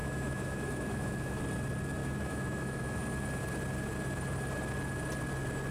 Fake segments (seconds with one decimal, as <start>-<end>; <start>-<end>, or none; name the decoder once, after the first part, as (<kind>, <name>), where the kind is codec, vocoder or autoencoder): 0.0-1.4 (autoencoder, DAC-VAE); 2.0-3.0